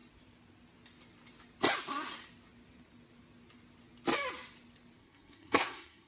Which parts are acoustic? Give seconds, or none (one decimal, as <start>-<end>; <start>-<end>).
0.0-5.0